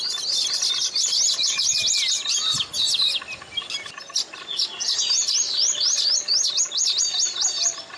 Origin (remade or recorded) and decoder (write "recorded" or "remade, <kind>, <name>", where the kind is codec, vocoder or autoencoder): recorded